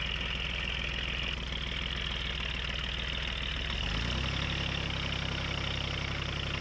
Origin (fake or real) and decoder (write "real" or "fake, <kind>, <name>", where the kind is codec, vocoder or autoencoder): real